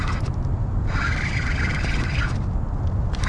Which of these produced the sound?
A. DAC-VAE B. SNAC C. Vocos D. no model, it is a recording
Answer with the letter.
D